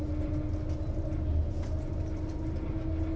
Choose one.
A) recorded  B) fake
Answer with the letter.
A